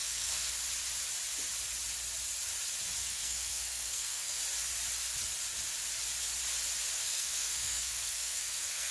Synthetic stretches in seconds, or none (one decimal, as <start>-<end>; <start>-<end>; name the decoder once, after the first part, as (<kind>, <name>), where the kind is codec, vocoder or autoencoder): 0.0-0.5 (codec, SNAC); 3.0-4.4; 7.0-8.9